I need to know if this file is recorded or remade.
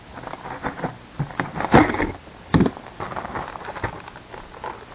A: recorded